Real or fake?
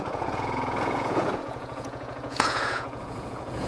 fake